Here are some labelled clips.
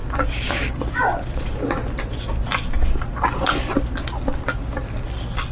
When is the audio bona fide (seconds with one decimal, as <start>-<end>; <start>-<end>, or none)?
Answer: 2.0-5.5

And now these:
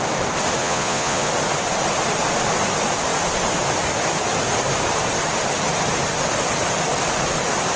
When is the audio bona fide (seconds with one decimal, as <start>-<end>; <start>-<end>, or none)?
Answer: 0.0-0.6; 1.3-7.8

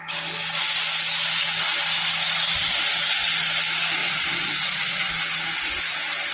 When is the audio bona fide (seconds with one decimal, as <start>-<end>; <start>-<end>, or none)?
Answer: 0.0-4.0; 5.1-6.3